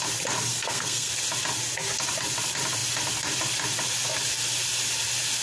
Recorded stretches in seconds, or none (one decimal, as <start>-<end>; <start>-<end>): 0.0-0.5; 1.1-5.4

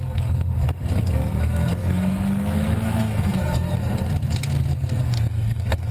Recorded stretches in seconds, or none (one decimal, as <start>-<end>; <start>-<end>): 3.7-4.7